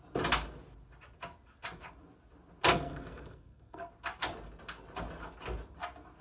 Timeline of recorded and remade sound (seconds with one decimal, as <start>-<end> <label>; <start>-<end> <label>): 0.0-2.7 recorded; 2.7-3.9 remade; 3.9-6.2 recorded